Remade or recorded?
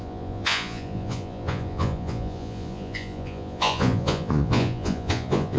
remade